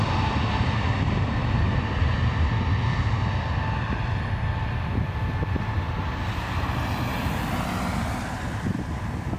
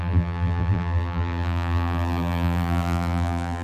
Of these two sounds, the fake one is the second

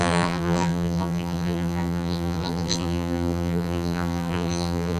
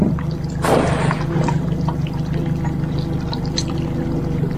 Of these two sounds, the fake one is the first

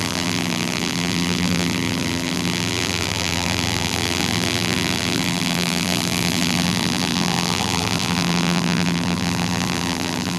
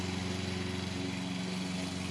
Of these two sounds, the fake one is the first